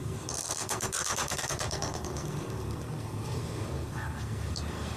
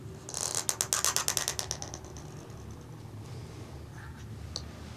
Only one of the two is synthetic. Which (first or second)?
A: first